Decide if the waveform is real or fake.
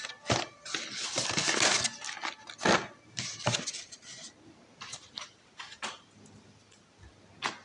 real